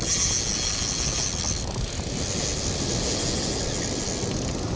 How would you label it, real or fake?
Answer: real